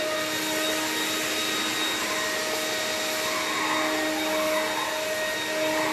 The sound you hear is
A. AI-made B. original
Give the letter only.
B